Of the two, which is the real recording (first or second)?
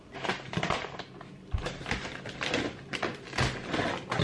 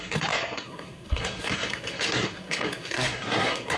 first